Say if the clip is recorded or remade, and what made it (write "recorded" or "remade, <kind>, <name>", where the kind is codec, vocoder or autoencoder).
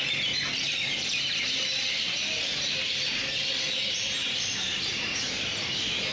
remade, vocoder, BigVGAN v2